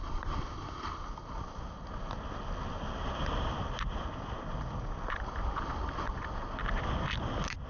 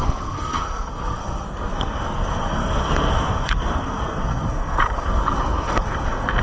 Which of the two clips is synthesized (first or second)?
second